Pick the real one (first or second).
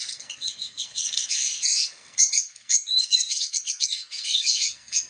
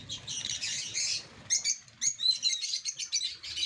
second